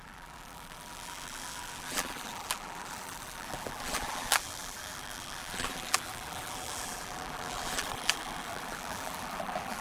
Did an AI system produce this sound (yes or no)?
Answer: yes